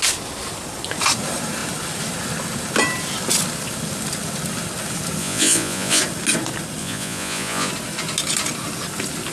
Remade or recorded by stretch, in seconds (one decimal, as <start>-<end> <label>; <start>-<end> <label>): 0.0-5.2 recorded; 5.2-6.0 remade; 6.0-6.8 recorded; 6.8-7.7 remade; 7.7-9.3 recorded